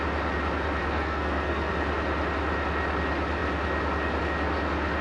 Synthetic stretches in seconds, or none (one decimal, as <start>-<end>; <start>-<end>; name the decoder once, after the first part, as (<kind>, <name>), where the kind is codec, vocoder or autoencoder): 0.8-1.7 (codec, SNAC)